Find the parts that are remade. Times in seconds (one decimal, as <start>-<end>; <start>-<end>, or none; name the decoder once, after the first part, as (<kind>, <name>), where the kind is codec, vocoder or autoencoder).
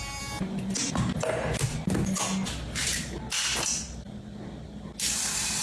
none